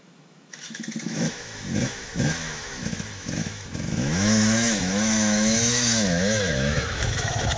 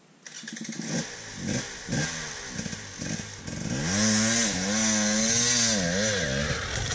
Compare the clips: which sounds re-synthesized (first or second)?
first